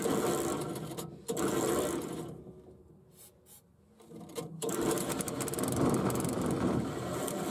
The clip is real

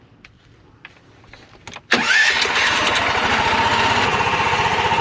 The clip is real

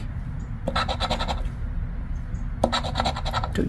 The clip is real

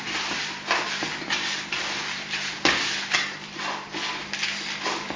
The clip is real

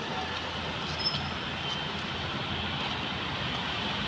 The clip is real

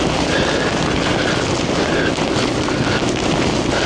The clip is real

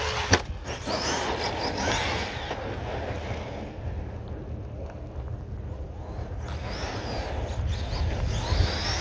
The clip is real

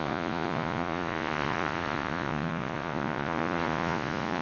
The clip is fake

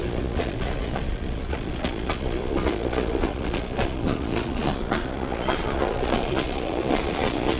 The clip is fake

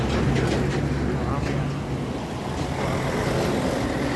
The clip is real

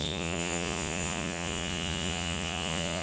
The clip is fake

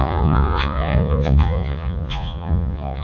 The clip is fake